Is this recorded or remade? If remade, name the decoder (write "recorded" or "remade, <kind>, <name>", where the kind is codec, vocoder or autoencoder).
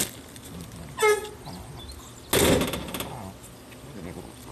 recorded